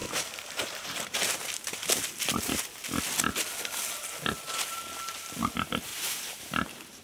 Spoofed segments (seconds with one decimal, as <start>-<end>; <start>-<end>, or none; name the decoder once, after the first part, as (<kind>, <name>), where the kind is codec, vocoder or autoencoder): 0.0-2.1 (vocoder, BigVGAN v2); 5.9-7.0